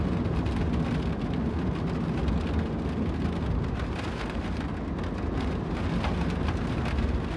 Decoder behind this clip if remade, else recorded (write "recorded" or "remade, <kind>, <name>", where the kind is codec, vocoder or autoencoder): recorded